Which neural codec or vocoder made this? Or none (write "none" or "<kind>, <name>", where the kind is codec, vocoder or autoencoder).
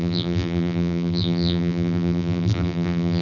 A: vocoder, BigVGAN v2